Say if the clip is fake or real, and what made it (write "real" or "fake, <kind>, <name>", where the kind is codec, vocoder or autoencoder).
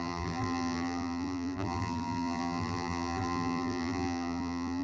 fake, vocoder, BigVGAN v2